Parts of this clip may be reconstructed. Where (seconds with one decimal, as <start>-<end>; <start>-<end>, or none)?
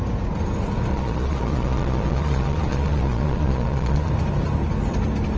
0.9-4.1